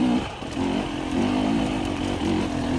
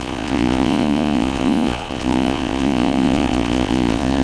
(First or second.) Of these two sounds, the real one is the first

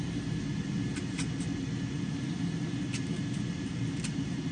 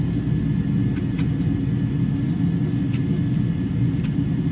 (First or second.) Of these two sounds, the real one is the second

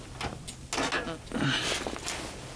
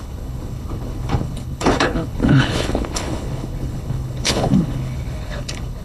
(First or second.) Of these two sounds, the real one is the first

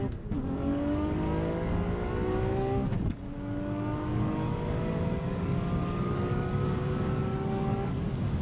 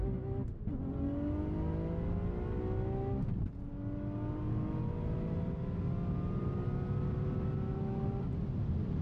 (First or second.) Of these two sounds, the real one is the second